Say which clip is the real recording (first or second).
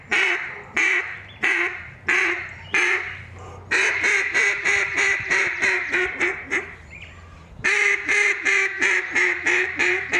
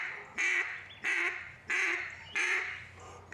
second